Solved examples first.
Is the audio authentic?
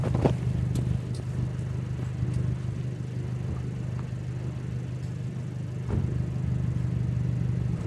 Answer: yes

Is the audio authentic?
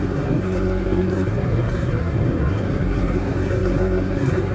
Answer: no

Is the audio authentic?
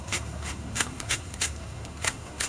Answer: no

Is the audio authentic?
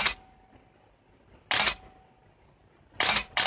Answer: yes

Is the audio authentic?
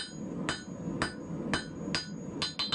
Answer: yes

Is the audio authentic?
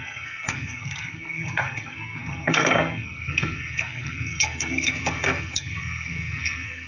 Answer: no